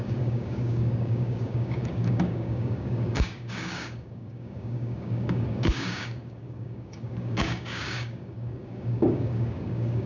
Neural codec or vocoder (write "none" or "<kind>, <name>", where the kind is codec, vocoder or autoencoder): codec, DAC